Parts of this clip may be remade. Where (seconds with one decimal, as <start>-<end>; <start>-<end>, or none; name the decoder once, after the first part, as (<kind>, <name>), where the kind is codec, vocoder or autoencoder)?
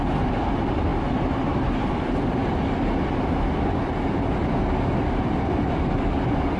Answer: 0.0-2.4 (vocoder, BigVGAN v2); 5.0-6.6